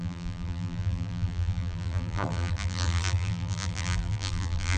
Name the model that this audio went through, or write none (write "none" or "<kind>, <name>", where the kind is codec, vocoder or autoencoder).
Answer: vocoder, BigVGAN v2